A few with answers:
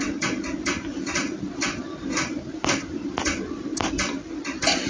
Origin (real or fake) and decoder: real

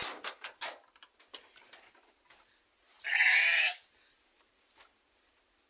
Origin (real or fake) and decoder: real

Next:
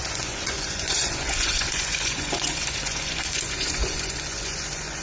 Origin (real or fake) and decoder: fake, vocoder, Vocos